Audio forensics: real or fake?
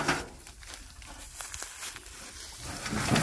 real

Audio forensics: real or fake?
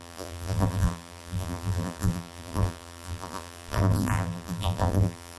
fake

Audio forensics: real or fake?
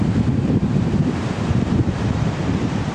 fake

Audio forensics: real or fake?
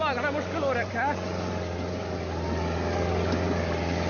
real